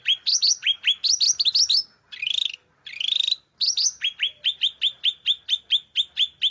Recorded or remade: recorded